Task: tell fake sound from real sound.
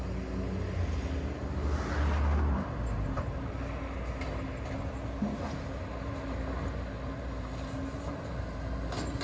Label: real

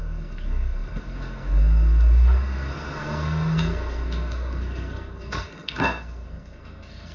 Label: fake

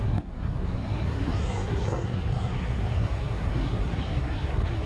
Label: fake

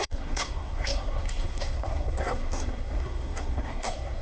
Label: fake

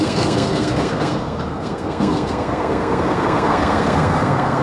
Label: fake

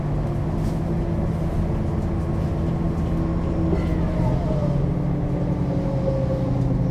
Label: real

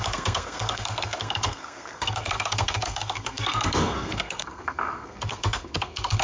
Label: fake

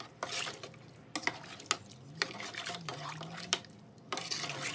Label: real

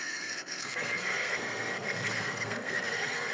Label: fake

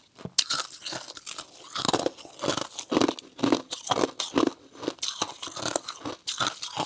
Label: real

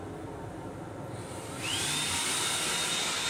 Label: real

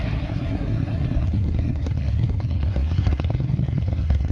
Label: fake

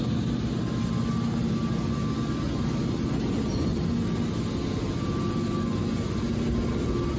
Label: real